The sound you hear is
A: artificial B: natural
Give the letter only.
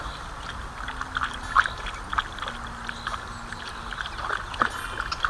B